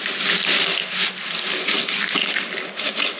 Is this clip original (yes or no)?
yes